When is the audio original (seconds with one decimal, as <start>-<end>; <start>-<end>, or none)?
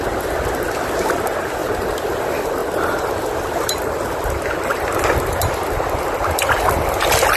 0.0-7.4